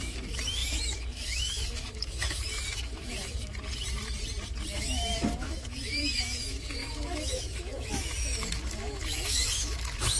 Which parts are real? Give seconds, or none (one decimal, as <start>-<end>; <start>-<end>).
3.5-4.7